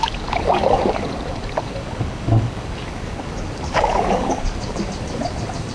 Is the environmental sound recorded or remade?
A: remade